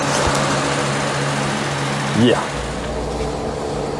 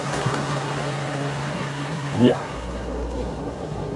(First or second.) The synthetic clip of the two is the second